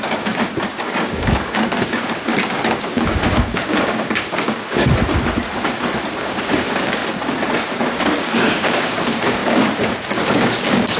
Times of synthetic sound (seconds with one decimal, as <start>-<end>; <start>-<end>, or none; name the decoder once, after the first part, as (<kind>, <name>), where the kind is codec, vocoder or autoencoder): 0.0-4.8 (codec, DAC); 6.1-7.0; 7.8-11.0